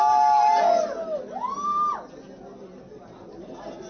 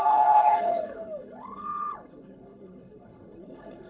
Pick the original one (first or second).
first